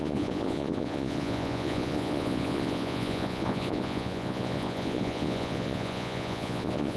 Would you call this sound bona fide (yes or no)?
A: no